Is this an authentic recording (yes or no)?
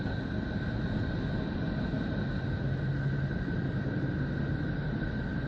yes